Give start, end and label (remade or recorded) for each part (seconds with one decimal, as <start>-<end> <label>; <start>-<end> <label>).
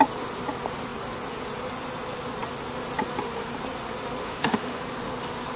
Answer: 0.0-4.2 recorded; 4.2-4.8 remade; 4.8-5.6 recorded